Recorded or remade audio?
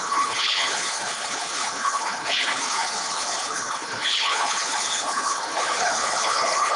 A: remade